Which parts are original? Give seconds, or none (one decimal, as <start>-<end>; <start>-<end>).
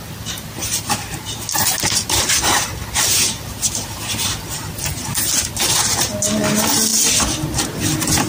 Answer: 0.0-8.3